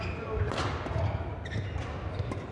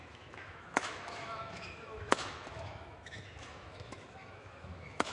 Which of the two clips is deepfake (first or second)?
second